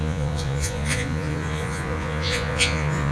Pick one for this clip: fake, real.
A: fake